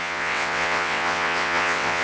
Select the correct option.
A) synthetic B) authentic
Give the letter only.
A